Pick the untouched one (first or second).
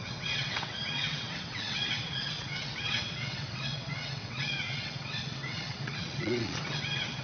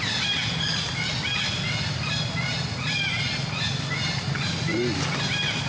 second